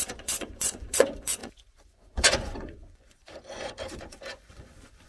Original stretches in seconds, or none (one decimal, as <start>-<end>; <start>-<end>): none